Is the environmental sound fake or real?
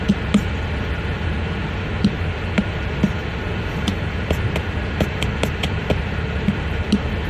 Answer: real